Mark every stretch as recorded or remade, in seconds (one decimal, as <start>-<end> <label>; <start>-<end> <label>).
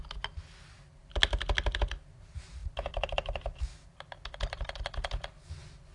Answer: 0.0-5.9 recorded